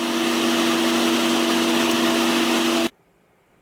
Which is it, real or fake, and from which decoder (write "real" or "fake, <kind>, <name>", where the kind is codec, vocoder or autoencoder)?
real